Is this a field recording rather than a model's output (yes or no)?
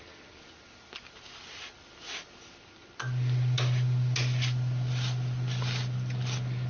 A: yes